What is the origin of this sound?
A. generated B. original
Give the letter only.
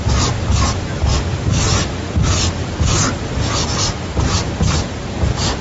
B